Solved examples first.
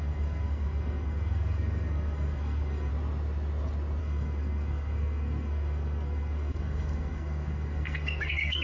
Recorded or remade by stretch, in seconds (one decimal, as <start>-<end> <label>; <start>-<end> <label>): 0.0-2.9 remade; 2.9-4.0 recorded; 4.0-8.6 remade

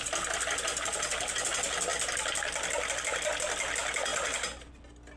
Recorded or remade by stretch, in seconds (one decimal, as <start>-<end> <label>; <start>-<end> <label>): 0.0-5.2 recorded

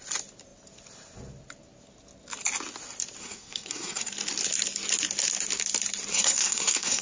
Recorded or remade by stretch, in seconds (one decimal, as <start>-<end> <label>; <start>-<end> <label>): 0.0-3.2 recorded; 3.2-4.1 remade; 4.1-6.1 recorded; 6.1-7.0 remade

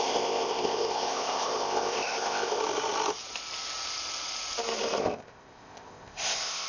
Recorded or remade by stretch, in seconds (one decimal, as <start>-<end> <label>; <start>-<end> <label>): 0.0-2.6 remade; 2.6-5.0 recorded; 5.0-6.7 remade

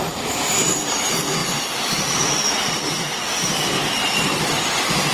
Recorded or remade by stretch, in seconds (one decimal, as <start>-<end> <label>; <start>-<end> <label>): 0.0-5.1 remade